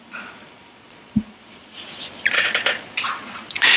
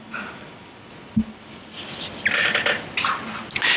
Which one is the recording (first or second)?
second